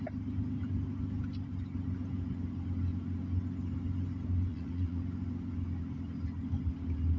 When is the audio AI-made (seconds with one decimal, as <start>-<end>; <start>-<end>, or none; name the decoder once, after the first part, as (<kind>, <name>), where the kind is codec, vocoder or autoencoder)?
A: 4.5-5.0 (vocoder, Vocos)